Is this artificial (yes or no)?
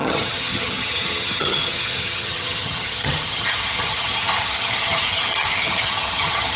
yes